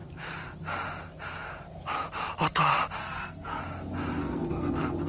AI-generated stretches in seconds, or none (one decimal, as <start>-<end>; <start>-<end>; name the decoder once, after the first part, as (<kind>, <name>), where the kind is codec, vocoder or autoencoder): 3.0-3.6 (codec, SNAC); 4.2-5.1